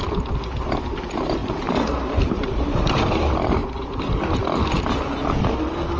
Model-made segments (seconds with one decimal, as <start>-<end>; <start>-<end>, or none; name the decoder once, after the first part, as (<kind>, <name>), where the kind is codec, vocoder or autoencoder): none

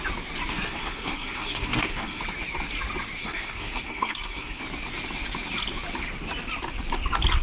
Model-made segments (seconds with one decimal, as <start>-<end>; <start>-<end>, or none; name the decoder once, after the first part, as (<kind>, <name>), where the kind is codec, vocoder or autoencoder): 0.5-2.2 (codec, SNAC); 3.2-4.6